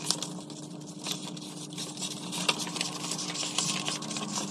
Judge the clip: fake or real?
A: real